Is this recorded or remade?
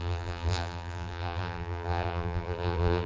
remade